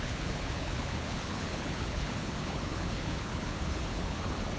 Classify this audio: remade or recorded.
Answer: remade